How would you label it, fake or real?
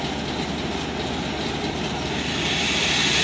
real